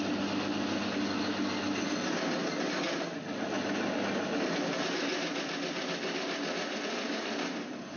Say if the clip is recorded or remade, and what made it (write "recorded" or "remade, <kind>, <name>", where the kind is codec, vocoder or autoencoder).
recorded